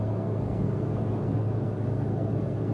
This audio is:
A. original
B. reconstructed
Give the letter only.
B